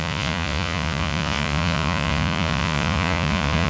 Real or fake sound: fake